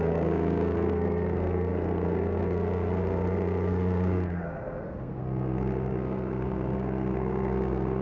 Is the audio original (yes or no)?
no